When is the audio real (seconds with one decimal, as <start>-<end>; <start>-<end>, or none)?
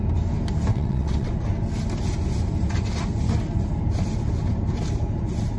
0.0-0.7; 1.3-5.6